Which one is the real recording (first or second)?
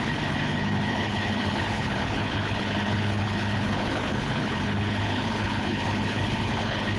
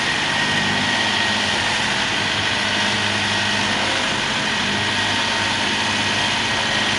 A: second